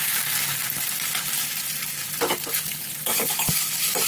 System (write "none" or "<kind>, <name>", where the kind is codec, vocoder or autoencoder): none